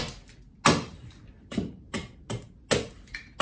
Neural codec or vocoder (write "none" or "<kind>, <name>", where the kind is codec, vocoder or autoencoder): none